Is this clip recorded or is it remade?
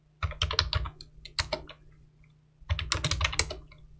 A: recorded